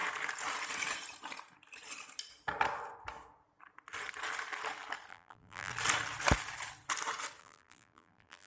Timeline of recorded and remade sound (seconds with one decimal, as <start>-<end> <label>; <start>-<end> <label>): 0.0-5.1 recorded; 5.1-5.7 remade; 5.7-7.4 recorded; 7.4-8.5 remade